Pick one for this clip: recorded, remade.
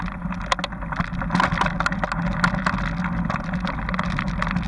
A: recorded